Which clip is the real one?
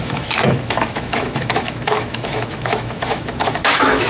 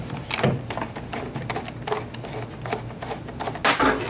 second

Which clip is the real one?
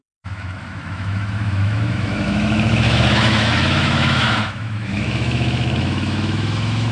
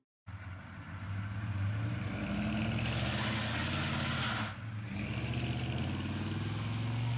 second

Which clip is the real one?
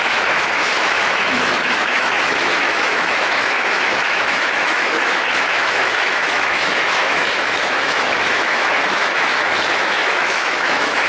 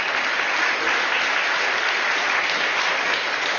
second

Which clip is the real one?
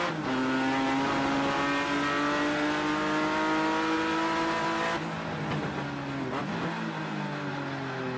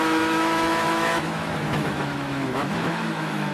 first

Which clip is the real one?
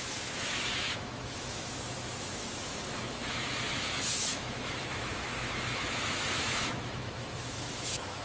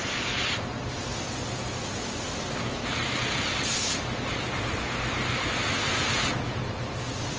second